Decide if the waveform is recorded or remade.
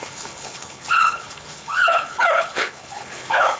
remade